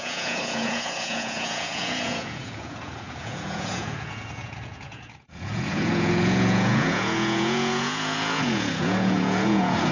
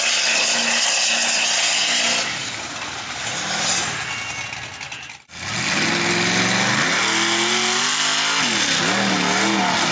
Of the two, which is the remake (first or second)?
first